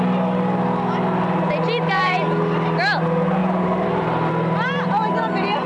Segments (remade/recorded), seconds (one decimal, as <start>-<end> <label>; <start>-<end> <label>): 0.0-3.4 recorded; 3.4-4.3 remade; 4.3-5.7 recorded